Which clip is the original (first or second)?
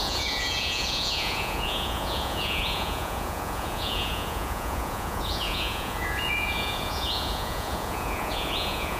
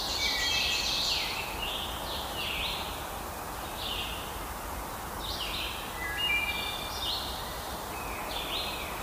second